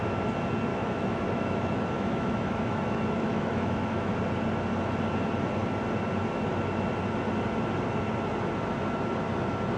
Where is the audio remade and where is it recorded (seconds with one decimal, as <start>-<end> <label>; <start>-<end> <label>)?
0.0-0.7 recorded; 0.7-4.1 remade; 4.1-9.8 recorded